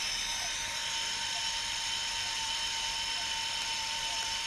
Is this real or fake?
real